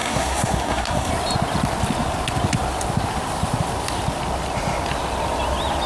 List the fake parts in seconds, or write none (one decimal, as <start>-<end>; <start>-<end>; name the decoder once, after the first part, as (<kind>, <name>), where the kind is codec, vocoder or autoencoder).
0.0-1.1 (codec, SNAC)